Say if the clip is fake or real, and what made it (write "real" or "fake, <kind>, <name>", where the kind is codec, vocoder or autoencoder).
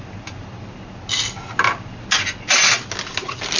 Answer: real